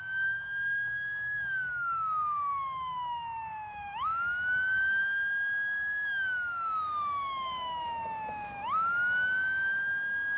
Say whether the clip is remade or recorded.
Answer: remade